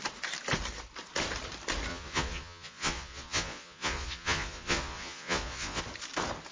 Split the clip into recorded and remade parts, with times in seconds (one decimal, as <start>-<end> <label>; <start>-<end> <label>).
0.0-1.9 recorded; 1.9-5.8 remade; 5.8-6.5 recorded